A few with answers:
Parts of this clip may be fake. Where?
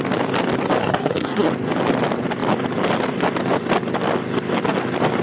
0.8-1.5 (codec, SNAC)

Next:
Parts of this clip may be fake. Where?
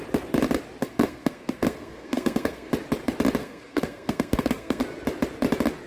0.8-2.7 (codec, SNAC); 3.4-4.8